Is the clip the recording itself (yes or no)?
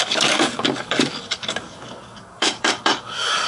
no